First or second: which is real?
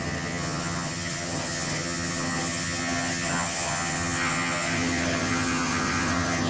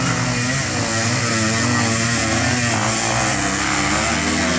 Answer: second